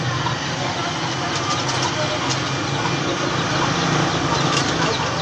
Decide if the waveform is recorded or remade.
recorded